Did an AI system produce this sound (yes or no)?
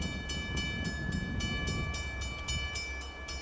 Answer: no